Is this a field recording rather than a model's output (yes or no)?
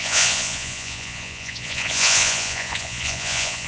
no